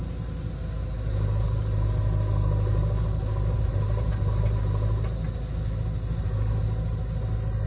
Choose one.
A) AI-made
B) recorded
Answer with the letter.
B